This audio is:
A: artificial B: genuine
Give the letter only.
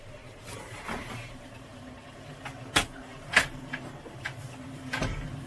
A